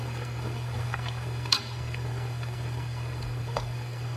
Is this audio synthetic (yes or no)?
yes